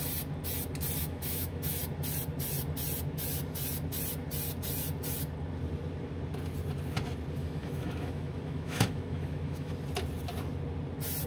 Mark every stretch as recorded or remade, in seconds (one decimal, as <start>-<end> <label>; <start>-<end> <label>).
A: 0.0-1.0 recorded; 1.0-1.8 remade; 1.8-7.4 recorded; 7.4-9.7 remade; 9.7-11.3 recorded